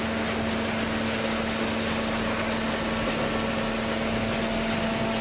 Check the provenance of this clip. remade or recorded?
recorded